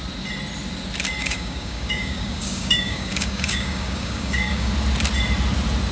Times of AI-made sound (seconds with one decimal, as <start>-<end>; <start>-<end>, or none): 1.2-4.7